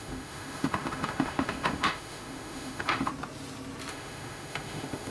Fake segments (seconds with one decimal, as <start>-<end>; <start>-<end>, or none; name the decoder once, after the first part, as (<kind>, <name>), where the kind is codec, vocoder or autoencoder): 0.0-3.1 (autoencoder, DAC-VAE); 3.9-5.1